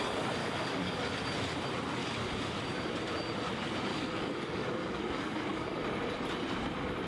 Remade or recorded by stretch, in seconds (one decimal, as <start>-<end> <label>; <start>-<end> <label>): 0.0-0.4 recorded; 0.4-1.0 remade; 1.0-2.0 recorded; 2.0-2.5 remade; 2.5-3.9 recorded; 3.9-5.8 remade; 5.8-7.1 recorded

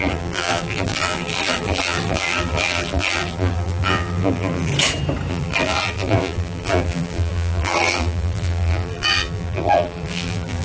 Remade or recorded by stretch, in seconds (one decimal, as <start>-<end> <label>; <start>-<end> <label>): 0.0-4.7 remade; 4.7-5.3 recorded; 5.3-10.6 remade

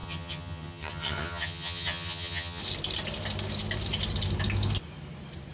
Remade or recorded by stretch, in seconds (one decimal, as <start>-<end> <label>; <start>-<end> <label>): 0.0-2.6 remade; 2.6-5.5 recorded

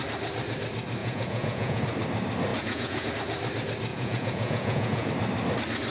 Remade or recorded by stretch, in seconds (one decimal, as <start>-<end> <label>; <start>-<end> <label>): 0.0-1.0 recorded; 1.0-1.8 remade; 1.8-2.5 recorded; 2.5-3.1 remade; 3.1-3.9 recorded; 3.9-5.1 remade; 5.1-5.9 recorded

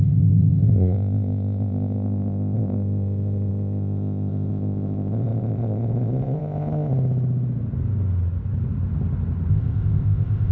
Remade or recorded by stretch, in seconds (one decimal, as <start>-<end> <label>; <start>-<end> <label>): 0.0-6.9 remade; 6.9-9.5 recorded; 9.5-10.5 remade